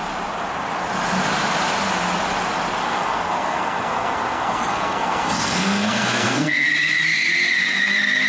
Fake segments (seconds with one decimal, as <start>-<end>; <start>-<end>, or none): 2.8-6.7